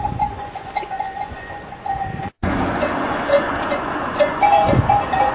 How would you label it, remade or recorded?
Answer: remade